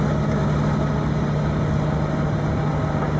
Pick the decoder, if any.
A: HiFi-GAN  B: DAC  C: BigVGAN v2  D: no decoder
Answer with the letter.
D